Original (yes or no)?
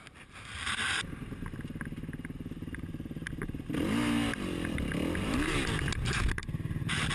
yes